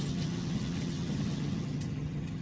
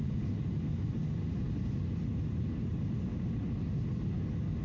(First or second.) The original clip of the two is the second